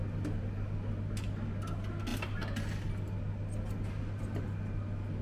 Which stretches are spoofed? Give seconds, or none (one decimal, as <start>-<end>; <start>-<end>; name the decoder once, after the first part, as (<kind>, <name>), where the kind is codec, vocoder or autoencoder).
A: none